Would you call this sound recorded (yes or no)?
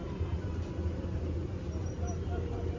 yes